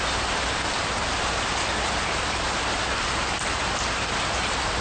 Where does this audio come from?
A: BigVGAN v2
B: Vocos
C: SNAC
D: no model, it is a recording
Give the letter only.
D